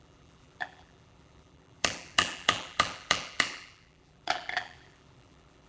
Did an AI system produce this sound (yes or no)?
yes